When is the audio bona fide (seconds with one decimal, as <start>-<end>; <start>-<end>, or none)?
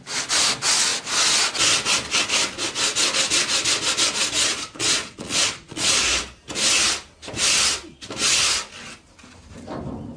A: 0.0-4.5; 6.2-10.2